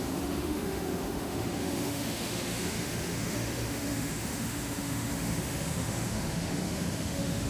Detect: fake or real fake